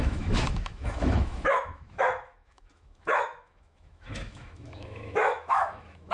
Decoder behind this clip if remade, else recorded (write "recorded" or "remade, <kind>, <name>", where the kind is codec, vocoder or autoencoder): remade, autoencoder, DAC-VAE